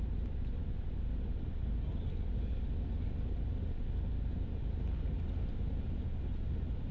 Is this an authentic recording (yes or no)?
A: yes